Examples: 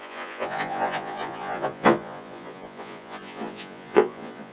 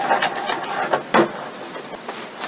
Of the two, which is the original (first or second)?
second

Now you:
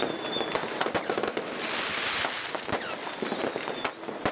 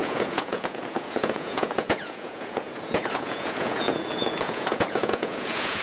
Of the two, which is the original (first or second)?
first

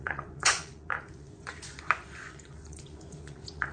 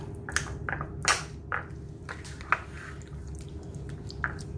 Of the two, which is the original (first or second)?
second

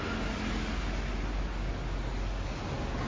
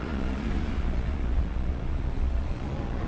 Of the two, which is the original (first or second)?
first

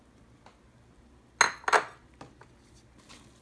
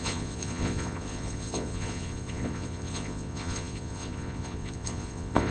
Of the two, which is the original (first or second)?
first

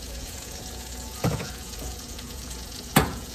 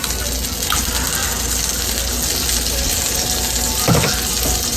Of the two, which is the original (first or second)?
second